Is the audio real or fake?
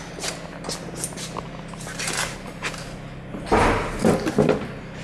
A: real